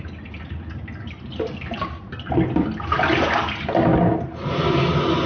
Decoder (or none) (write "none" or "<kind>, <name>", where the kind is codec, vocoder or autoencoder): none